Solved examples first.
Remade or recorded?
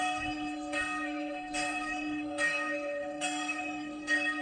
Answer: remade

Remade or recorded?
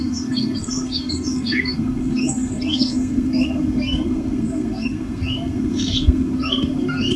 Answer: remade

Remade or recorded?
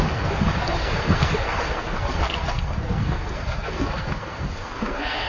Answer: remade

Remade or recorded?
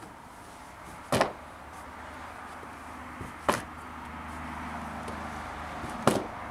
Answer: recorded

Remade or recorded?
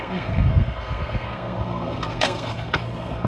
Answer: remade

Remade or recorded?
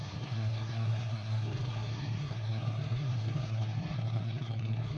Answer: remade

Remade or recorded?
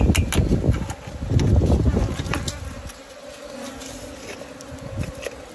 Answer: recorded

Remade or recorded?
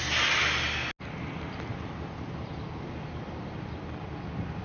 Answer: recorded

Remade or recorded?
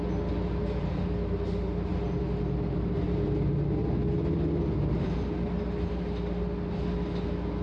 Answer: recorded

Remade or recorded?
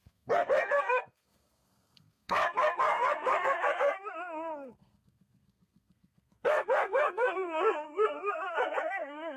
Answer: remade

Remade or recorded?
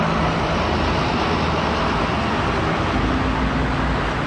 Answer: recorded